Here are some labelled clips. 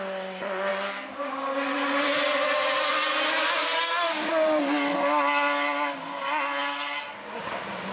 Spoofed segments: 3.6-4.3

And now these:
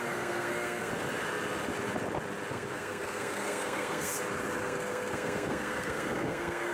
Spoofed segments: 0.0-0.9; 2.5-4.1; 4.6-6.7

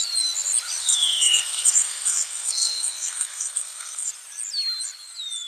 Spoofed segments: 0.8-4.1

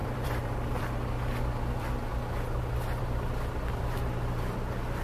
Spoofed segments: 0.0-0.8

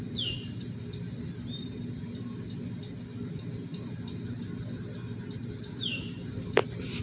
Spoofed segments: none

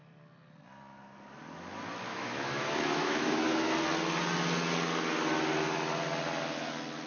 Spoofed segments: 2.1-3.7

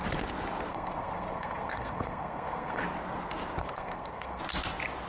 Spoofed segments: 0.7-2.8; 3.6-4.4